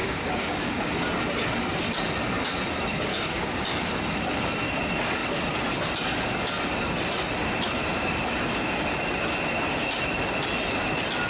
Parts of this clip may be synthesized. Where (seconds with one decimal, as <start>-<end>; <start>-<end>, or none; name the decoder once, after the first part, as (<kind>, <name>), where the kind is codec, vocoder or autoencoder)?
0.0-0.9 (codec, DAC); 2.9-3.7